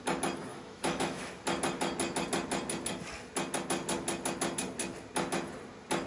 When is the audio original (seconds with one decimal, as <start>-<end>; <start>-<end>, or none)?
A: 0.0-0.5; 1.3-6.1